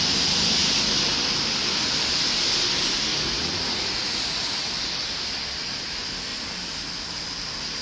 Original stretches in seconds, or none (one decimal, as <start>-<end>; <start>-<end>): 0.0-3.1; 4.7-7.8